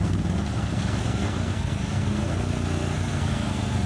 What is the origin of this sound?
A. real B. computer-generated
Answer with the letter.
B